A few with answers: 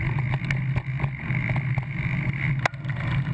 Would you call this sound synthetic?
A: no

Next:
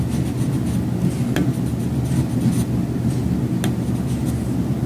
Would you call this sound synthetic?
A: no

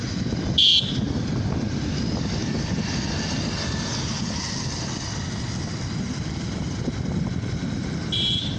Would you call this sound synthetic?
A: no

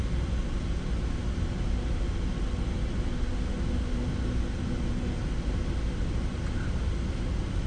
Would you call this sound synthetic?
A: no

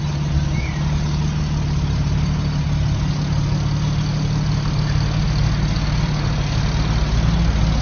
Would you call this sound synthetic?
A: no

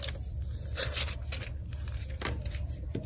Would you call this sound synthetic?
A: no